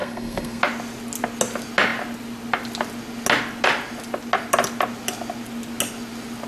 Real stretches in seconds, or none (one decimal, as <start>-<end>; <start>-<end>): 0.6-6.5